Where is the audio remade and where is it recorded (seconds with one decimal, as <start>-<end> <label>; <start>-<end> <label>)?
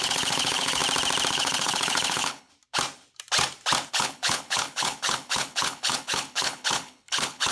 0.0-0.8 remade; 0.8-1.3 recorded; 1.3-2.5 remade; 2.5-3.9 recorded; 3.9-7.5 remade